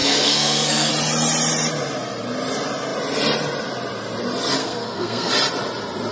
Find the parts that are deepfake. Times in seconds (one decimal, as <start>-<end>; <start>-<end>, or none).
0.0-0.9; 4.6-5.3